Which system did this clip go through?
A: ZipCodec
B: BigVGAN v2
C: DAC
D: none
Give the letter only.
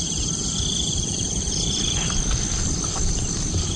B